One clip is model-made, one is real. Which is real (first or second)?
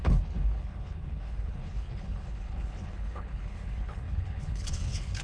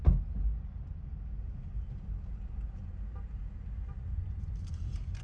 second